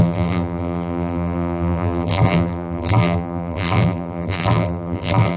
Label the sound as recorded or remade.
remade